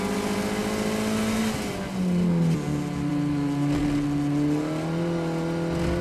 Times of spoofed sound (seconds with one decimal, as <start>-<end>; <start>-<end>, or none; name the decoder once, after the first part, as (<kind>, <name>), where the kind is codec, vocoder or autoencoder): none